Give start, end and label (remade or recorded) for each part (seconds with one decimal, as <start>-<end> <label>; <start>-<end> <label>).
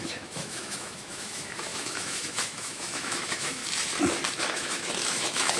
0.0-3.6 remade; 3.6-4.4 recorded; 4.4-5.6 remade